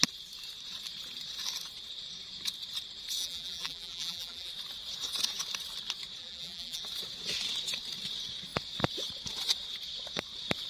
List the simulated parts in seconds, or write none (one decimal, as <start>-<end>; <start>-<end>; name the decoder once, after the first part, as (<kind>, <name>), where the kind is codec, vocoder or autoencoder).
3.2-4.5 (vocoder, BigVGAN v2); 6.2-6.8